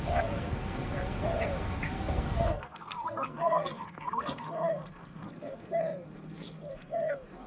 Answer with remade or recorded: remade